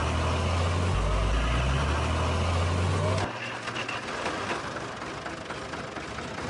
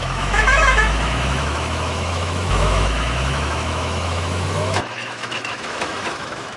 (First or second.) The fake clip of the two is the second